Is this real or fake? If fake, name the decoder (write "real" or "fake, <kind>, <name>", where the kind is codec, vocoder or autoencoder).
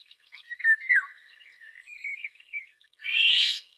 fake, codec, SNAC